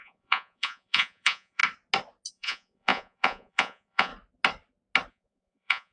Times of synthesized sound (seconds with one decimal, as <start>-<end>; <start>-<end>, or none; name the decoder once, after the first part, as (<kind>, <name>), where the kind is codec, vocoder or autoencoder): 0.0-1.6 (vocoder, Vocos); 2.3-4.1; 5.1-5.9